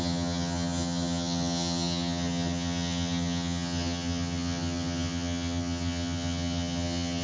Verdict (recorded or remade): remade